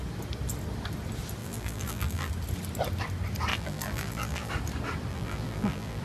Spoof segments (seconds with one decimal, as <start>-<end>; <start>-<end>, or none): 1.4-2.3; 3.5-4.5; 5.1-6.0